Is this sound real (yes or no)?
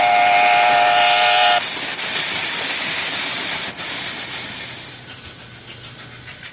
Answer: yes